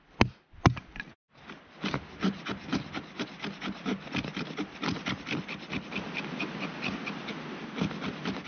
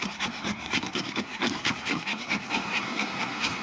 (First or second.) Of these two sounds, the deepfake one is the second